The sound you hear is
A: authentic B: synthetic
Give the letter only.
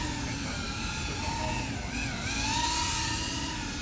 A